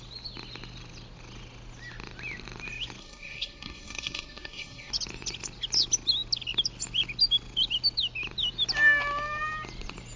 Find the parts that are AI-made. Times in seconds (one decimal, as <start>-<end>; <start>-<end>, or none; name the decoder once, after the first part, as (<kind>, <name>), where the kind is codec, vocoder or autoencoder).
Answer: 3.0-4.9 (codec, SNAC)